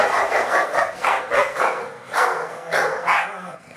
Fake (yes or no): yes